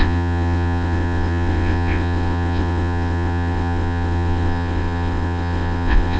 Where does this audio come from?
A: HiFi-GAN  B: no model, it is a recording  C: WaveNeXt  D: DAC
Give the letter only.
C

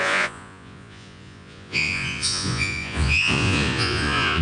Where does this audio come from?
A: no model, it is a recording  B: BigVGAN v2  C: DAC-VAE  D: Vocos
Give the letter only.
D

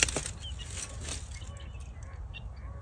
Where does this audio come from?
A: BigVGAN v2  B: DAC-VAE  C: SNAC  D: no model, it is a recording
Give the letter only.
D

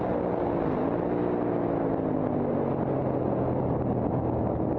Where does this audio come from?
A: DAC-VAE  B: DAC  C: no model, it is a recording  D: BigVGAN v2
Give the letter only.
C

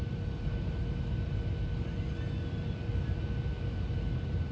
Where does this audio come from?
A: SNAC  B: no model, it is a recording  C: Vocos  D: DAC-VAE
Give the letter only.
B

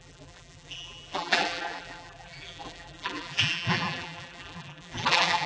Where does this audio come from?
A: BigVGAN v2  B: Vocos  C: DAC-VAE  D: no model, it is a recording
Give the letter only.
A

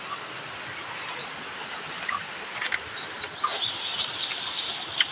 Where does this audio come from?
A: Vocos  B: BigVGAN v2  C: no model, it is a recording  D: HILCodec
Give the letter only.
C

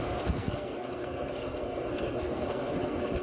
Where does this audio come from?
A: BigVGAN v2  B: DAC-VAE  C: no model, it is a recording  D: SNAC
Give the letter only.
D